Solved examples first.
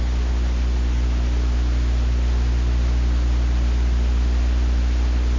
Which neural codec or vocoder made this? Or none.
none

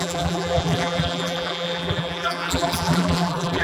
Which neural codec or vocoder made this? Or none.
vocoder, BigVGAN v2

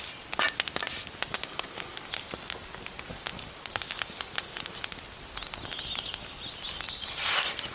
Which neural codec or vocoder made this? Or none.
none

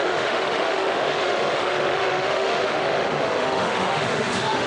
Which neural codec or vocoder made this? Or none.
autoencoder, DAC-VAE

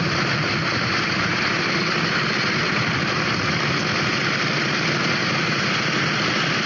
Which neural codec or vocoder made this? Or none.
none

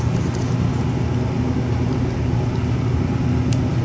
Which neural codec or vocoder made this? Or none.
none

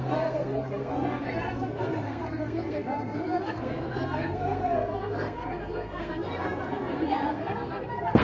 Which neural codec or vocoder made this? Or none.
codec, SNAC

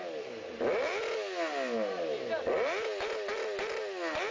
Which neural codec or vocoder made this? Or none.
none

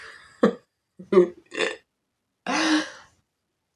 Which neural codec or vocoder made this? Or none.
none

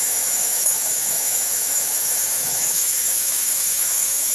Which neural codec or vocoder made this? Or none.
autoencoder, DAC-VAE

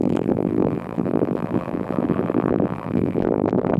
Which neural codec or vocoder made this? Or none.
vocoder, BigVGAN v2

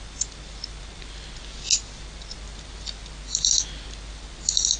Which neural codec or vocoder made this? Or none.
none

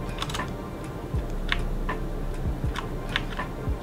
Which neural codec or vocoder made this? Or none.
none